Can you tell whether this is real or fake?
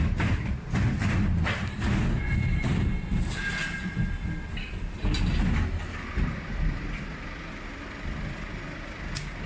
real